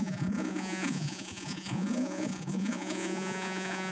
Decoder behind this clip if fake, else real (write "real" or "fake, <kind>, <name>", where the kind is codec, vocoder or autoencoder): fake, vocoder, Vocos